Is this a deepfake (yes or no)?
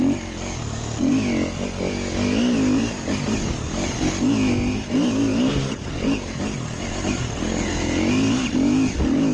no